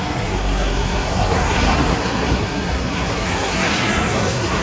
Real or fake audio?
fake